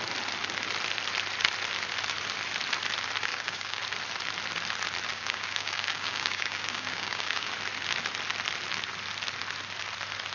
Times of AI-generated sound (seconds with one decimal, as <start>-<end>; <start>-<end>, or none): 3.3-3.8; 5.1-7.5